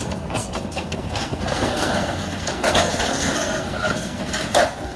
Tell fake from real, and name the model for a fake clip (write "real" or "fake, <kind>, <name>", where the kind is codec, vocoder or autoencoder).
fake, codec, SNAC